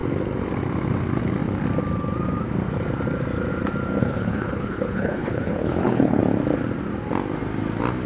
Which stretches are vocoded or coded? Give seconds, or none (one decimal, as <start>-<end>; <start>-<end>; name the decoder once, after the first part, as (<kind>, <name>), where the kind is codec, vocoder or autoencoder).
4.0-6.2 (codec, HILCodec)